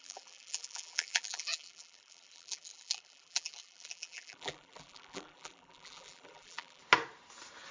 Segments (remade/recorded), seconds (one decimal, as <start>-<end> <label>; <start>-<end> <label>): 0.0-6.8 remade; 6.8-7.7 recorded